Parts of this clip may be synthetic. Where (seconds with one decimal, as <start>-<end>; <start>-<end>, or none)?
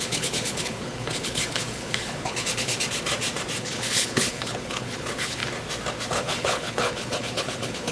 0.0-2.7; 3.6-5.4; 6.1-7.9